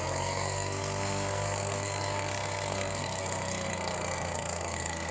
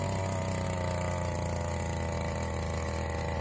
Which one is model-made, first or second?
first